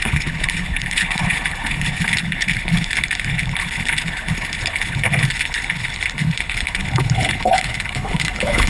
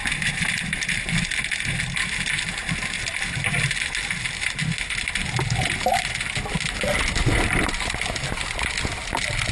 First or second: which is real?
second